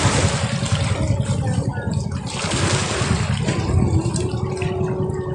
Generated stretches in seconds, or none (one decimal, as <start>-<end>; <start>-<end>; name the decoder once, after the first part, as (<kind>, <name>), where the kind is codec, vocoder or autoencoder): none